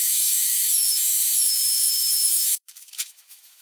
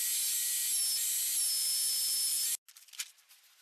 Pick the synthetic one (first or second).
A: first